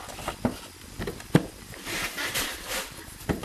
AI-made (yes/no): no